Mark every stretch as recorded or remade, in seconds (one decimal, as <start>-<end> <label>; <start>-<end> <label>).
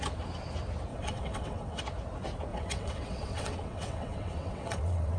0.0-0.9 recorded; 0.9-1.8 remade; 1.8-2.5 recorded; 2.5-5.2 remade